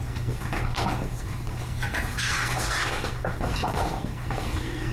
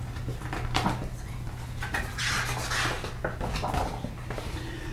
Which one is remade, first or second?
first